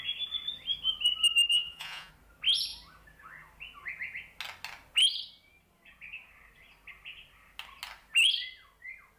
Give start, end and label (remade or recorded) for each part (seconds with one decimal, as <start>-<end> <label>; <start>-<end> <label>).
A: 0.0-1.5 recorded; 1.5-2.1 remade; 2.1-9.2 recorded